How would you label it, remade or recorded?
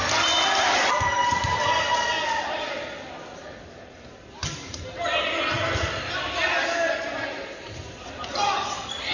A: recorded